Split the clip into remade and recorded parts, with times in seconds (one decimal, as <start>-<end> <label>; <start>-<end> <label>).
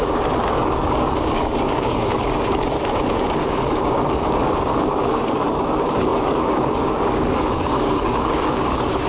0.0-9.1 remade